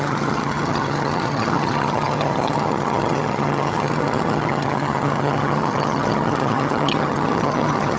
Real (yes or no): no